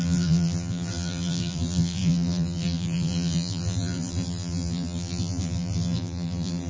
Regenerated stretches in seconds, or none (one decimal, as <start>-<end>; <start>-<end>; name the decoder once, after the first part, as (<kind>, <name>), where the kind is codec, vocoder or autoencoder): 0.0-6.7 (vocoder, BigVGAN v2)

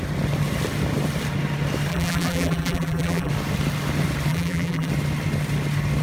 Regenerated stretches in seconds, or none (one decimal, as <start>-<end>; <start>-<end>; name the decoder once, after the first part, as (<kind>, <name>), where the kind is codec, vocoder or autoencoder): 1.9-3.3 (vocoder, BigVGAN v2); 4.3-4.9

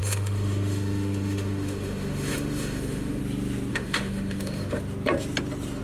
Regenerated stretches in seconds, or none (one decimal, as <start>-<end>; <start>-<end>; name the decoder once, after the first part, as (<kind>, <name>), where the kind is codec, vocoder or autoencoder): 0.0-3.2 (autoencoder, DAC-VAE); 3.7-4.8

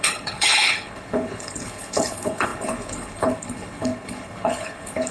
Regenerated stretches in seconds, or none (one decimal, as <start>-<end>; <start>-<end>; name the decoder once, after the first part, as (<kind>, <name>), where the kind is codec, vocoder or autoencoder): 0.0-5.1 (codec, HILCodec)

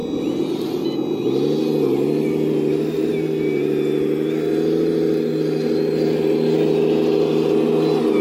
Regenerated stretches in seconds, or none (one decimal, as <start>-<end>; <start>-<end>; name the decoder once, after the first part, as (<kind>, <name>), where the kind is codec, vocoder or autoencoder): none

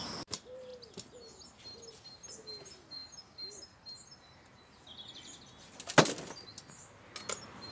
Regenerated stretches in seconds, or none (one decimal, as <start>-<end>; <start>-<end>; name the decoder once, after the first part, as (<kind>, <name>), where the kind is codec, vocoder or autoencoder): none